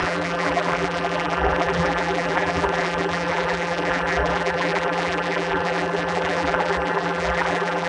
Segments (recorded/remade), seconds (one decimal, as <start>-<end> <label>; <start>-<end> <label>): 0.0-7.9 remade